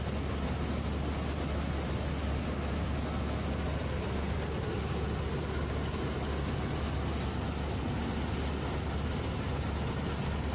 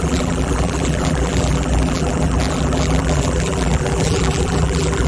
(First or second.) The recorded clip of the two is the first